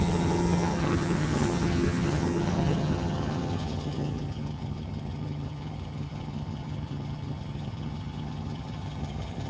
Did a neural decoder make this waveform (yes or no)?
yes